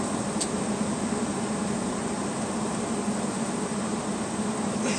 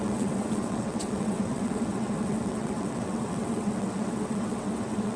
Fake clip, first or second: second